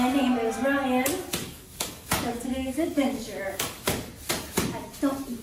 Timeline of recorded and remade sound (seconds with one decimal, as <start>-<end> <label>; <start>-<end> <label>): 0.0-1.4 recorded; 1.4-4.1 remade; 4.1-5.4 recorded